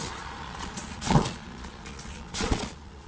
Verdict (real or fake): fake